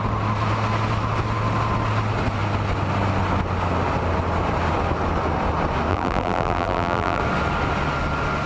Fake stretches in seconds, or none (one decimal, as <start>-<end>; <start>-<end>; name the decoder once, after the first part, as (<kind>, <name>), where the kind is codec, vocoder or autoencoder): 5.9-7.2 (vocoder, BigVGAN v2)